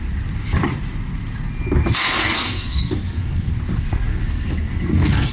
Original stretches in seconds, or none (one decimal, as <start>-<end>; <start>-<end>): 0.0-2.2; 3.5-3.9